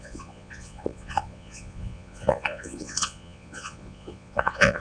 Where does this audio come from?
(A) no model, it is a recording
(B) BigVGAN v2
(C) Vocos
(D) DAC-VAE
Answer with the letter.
C